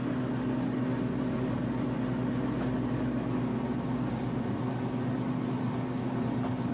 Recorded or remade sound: recorded